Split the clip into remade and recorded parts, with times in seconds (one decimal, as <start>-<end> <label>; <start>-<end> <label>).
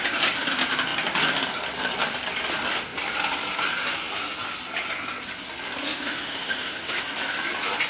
0.0-5.9 recorded; 5.9-7.0 remade; 7.0-7.9 recorded